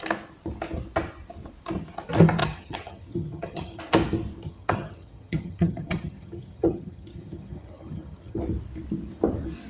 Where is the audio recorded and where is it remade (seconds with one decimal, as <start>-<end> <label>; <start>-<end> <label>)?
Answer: 0.0-2.4 recorded; 2.4-3.8 remade; 3.8-4.4 recorded; 4.4-8.4 remade; 8.4-9.7 recorded